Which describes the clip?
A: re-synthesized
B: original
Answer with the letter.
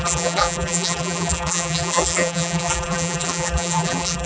A